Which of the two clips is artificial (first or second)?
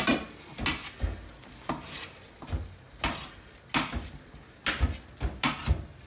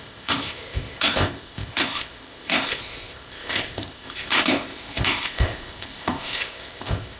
second